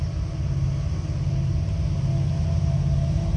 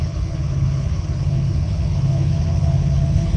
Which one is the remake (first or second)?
second